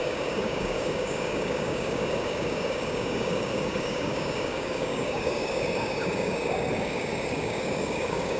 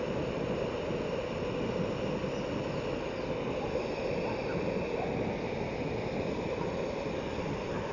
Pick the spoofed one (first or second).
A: first